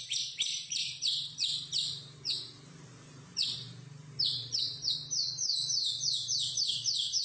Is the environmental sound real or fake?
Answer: fake